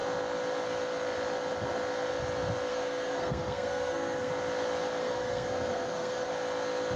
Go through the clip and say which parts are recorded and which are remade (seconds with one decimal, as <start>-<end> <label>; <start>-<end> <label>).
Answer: 0.0-2.7 recorded; 2.7-4.3 remade; 4.3-5.0 recorded; 5.0-6.3 remade; 6.3-7.0 recorded